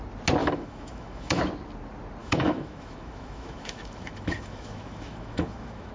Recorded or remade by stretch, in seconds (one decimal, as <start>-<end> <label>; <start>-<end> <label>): 0.0-0.4 recorded; 0.4-1.4 remade; 1.4-2.2 recorded; 2.2-5.9 remade